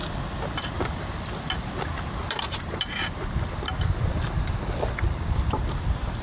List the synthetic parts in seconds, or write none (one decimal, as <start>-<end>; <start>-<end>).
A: none